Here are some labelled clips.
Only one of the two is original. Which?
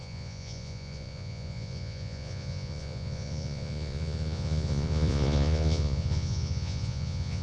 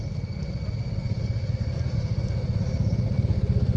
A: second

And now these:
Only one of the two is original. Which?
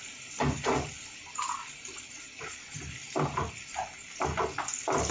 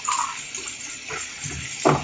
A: second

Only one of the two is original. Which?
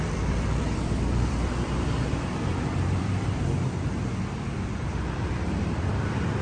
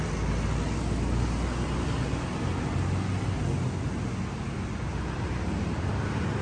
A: second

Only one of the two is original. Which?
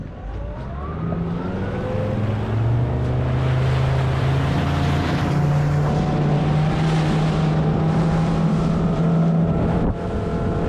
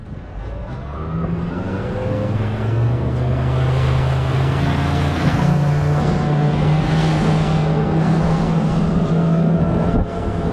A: first